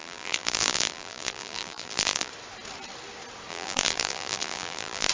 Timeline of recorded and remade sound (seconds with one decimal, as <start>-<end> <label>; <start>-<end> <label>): 0.0-2.3 remade; 2.3-3.5 recorded; 3.5-5.1 remade